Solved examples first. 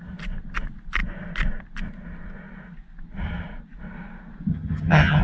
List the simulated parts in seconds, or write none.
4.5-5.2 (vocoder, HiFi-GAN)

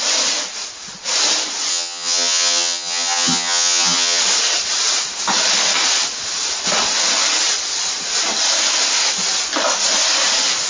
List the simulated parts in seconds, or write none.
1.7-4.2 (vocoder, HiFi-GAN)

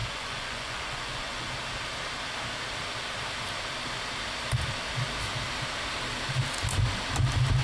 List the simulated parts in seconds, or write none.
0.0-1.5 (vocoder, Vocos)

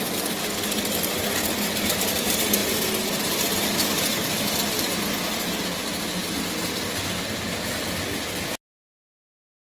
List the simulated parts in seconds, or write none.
none

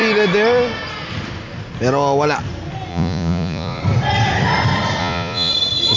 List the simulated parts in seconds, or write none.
2.9-3.8 (vocoder, Vocos); 5.0-5.5

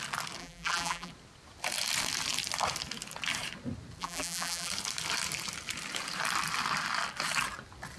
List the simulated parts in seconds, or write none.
0.4-1.1 (vocoder, BigVGAN v2); 4.0-4.7

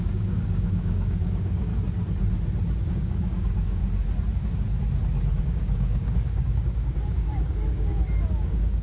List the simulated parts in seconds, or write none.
0.0-1.7 (codec, DAC); 2.8-3.8; 5.4-8.8

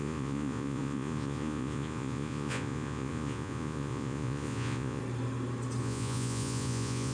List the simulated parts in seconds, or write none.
0.0-5.0 (vocoder, Vocos); 5.8-7.1